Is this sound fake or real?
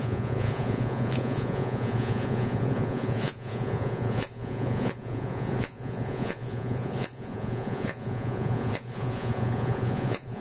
fake